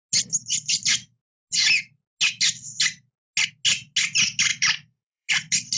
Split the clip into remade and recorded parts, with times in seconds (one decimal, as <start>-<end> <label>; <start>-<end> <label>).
0.0-4.5 recorded; 4.5-5.3 remade; 5.3-5.8 recorded